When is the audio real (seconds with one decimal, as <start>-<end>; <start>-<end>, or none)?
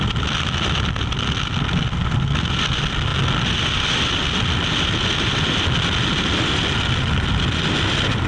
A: 0.0-8.3